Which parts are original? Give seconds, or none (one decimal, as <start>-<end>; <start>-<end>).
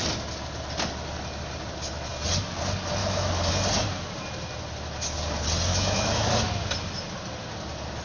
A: 0.0-3.0; 3.5-5.7; 6.3-8.0